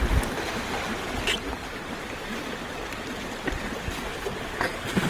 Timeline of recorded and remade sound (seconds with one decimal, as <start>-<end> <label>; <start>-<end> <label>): 0.0-1.6 recorded; 1.6-2.7 remade; 2.7-4.1 recorded; 4.1-5.1 remade